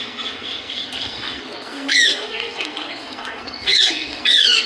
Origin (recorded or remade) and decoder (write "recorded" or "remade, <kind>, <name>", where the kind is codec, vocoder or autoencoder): remade, codec, SNAC